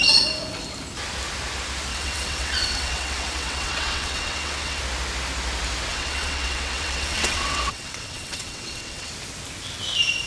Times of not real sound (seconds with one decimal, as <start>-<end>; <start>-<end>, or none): 1.9-4.8; 5.9-9.1